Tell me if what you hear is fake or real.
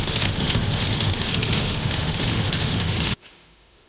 fake